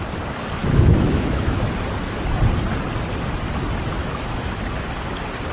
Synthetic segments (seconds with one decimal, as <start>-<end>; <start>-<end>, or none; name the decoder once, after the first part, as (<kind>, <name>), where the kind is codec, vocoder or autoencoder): 0.6-1.7 (autoencoder, DAC-VAE); 4.0-4.6